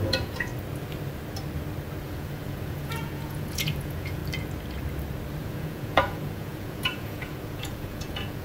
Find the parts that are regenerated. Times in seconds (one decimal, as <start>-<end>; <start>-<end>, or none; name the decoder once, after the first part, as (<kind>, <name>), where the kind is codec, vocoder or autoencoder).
0.0-0.5 (vocoder, Vocos); 2.0-4.2; 5.4-8.4